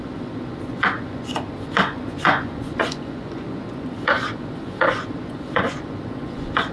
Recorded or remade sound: remade